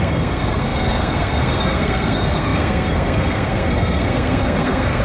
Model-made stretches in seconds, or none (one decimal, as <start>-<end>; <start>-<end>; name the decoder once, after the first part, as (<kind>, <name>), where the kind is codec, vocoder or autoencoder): 0.0-5.0 (codec, SNAC)